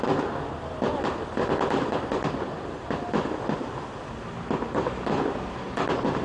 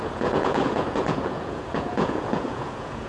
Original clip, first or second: first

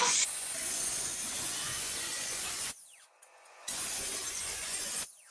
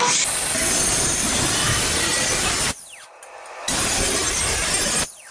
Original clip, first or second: second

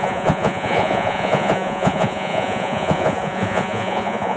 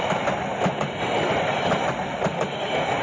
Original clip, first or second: second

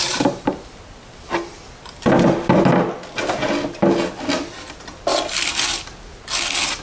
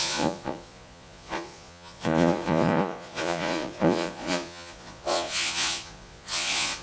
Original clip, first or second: first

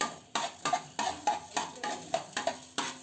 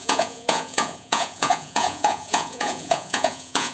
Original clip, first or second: first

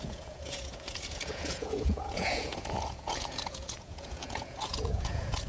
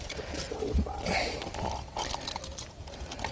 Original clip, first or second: second